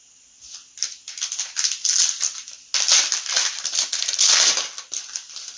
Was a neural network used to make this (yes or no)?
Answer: no